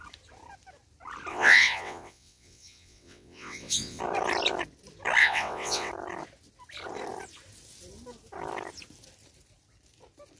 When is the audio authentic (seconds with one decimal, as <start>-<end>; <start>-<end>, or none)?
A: 0.0-1.3; 4.0-5.2; 5.9-10.4